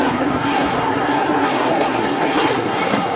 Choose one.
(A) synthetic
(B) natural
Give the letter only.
A